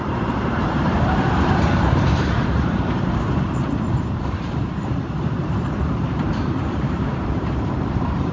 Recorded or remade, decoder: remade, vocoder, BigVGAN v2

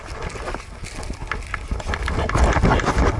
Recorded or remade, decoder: recorded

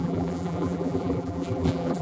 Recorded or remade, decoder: remade, vocoder, BigVGAN v2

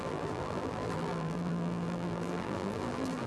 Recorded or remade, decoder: remade, vocoder, BigVGAN v2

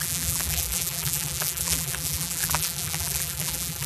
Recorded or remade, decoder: remade, vocoder, BigVGAN v2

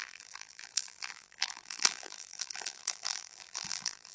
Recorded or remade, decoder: remade, vocoder, BigVGAN v2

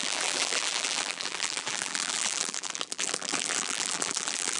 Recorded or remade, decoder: remade, vocoder, BigVGAN v2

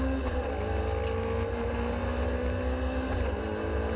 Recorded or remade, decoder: recorded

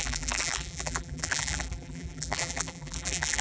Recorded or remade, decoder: remade, vocoder, BigVGAN v2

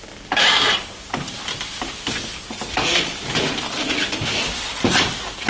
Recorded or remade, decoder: recorded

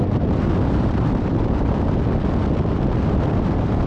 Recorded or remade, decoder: remade, vocoder, BigVGAN v2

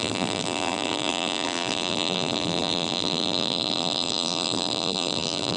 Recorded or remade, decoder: remade, vocoder, BigVGAN v2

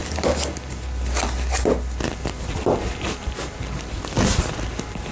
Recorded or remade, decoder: recorded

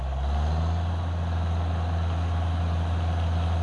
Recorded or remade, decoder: recorded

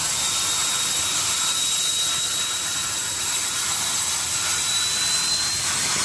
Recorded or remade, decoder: recorded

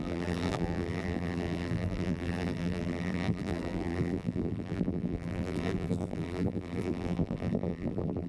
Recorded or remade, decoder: remade, vocoder, BigVGAN v2